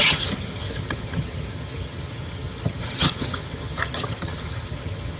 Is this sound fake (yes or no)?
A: yes